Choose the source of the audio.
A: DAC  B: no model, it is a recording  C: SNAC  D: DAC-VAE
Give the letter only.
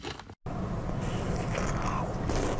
B